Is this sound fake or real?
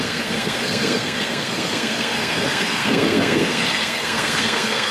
fake